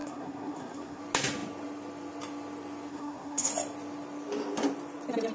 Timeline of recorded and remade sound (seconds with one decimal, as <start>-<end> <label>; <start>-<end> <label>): 0.0-1.0 remade; 1.0-2.9 recorded; 2.9-3.5 remade; 3.5-5.3 recorded